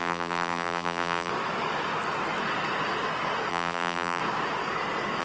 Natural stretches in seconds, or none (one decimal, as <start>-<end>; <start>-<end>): 1.3-3.5; 4.2-5.2